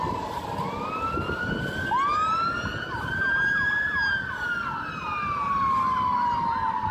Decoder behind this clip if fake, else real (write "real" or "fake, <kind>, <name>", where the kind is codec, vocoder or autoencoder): real